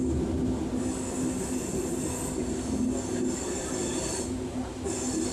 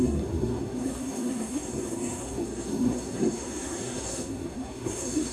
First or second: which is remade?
second